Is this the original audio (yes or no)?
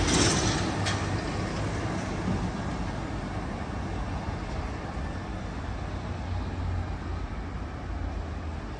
yes